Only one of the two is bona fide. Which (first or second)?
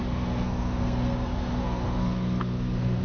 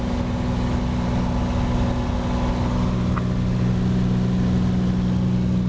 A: second